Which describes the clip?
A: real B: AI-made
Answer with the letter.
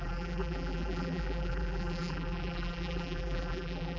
B